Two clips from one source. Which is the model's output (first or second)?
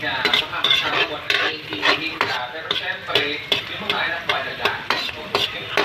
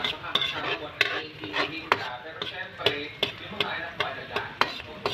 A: first